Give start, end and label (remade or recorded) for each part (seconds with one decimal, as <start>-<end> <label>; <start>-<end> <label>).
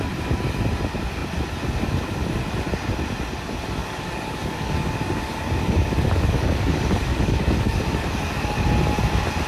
0.0-3.8 recorded; 3.8-8.6 remade; 8.6-9.5 recorded